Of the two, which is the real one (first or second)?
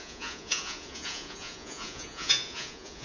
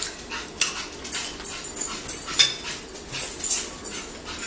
second